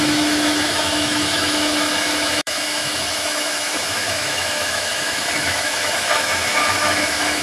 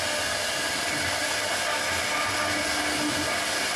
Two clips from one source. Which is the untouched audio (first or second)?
second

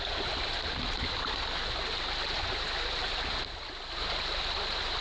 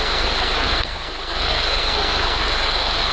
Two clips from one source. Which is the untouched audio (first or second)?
first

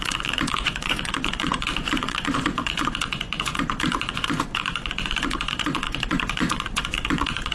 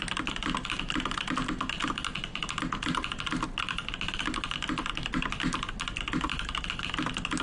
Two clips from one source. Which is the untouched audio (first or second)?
second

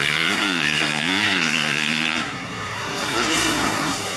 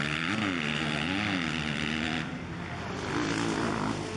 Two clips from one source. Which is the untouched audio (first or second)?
second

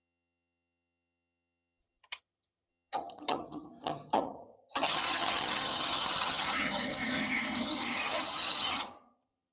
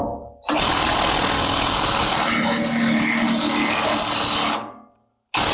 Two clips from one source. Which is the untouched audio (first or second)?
second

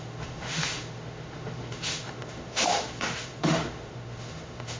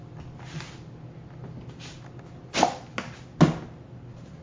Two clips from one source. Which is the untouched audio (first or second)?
second